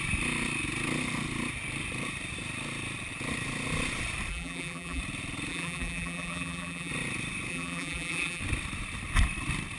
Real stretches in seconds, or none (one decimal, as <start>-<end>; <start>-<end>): 0.0-4.3; 5.0-5.5; 6.9-7.5; 8.4-9.8

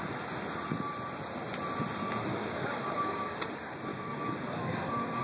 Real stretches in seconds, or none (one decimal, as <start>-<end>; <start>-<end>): 0.0-2.3; 3.5-3.9

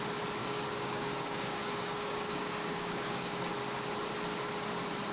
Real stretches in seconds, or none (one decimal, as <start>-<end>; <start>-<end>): 0.0-0.4; 3.5-5.1

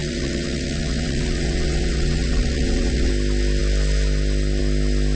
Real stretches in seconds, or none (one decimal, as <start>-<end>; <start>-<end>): 3.1-5.1

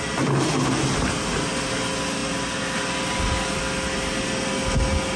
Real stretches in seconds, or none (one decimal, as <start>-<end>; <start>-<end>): 0.0-5.2